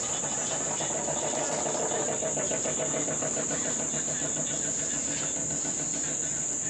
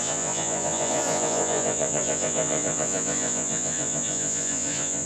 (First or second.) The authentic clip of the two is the first